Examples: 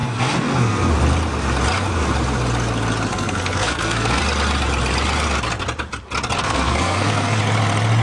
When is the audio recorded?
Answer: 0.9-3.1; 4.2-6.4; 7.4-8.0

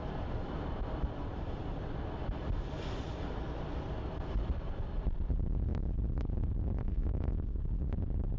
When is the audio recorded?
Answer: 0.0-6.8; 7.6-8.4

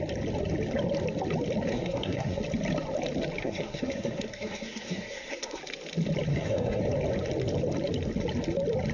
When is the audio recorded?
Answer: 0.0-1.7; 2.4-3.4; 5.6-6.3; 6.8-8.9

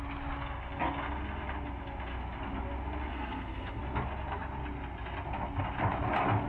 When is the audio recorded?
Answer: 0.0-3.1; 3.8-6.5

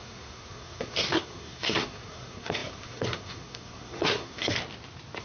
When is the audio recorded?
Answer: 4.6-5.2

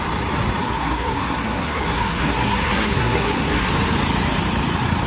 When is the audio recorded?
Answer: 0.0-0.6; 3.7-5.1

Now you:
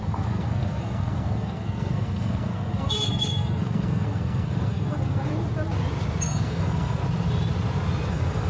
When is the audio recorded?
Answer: 5.3-6.2; 7.0-8.1

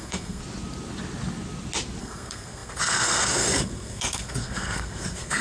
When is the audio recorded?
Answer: 0.4-2.0